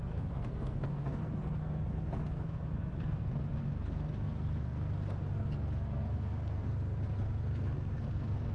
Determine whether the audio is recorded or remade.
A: remade